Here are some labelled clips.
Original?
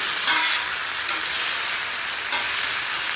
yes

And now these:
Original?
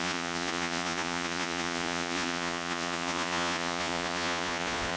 no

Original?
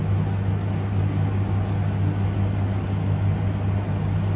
yes